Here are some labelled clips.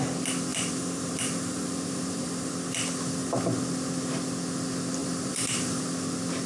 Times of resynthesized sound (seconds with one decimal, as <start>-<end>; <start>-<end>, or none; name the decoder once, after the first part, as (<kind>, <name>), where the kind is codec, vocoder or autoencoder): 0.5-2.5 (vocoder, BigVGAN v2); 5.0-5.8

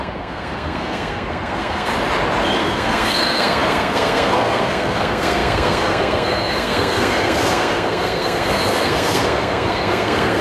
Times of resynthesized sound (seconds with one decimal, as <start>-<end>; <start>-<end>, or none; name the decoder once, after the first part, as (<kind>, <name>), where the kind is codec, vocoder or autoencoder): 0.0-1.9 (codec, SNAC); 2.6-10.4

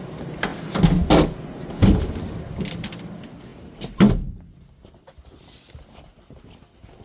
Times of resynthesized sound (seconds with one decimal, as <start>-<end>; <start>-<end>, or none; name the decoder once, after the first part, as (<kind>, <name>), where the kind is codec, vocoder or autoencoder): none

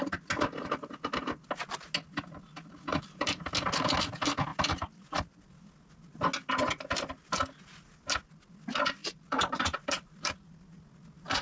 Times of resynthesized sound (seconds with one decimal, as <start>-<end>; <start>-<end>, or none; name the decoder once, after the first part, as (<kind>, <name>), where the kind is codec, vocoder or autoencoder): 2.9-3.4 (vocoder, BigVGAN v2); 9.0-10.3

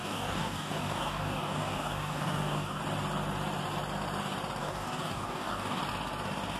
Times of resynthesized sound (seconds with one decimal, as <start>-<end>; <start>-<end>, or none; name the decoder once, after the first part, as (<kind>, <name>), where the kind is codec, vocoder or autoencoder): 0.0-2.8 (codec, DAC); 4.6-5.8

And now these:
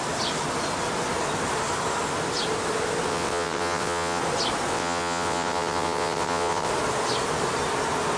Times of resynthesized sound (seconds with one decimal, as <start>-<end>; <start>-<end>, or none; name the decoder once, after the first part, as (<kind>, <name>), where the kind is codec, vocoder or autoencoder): 3.1-4.2 (vocoder, WaveNeXt); 4.7-6.7